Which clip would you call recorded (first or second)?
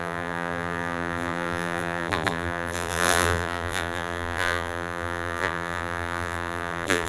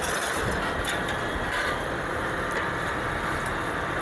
second